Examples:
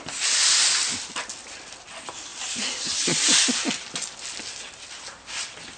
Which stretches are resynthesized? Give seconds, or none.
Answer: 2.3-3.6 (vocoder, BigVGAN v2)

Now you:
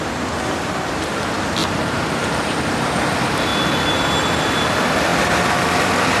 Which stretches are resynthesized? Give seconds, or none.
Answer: 1.6-2.9 (vocoder, BigVGAN v2)

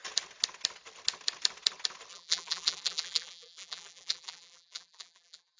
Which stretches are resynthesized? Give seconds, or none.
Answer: 2.1-5.6 (vocoder, BigVGAN v2)